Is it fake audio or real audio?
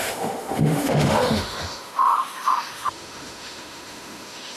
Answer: fake